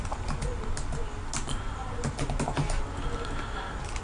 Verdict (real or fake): real